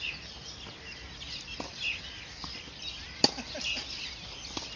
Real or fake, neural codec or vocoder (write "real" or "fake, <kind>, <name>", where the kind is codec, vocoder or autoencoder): real